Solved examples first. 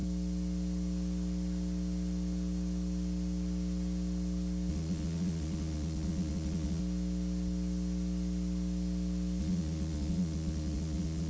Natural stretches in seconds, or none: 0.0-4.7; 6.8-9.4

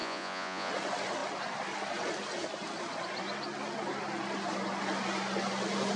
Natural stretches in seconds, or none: 0.7-6.0

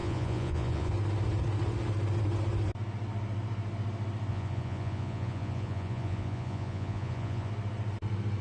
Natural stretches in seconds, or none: 0.9-4.3; 7.5-8.4

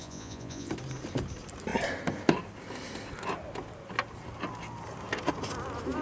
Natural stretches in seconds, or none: 0.7-6.0

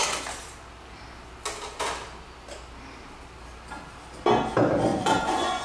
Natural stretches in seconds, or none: 0.0-4.9

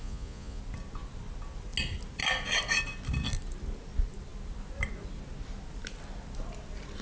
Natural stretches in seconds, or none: 0.6-7.0

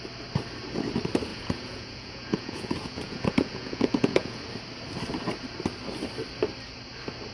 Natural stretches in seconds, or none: 0.0-1.3; 4.4-7.3